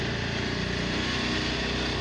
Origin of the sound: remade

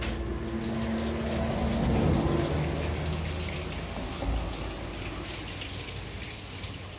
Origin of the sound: recorded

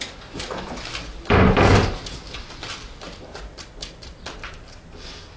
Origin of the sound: remade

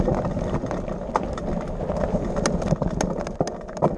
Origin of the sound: recorded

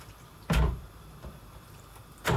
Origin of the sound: recorded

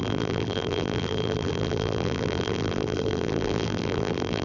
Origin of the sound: remade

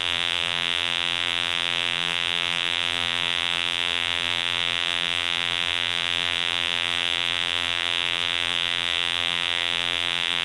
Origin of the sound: remade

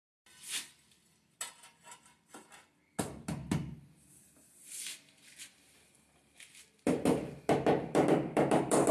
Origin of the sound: recorded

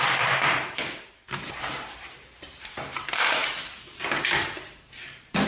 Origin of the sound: remade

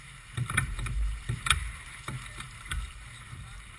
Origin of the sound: remade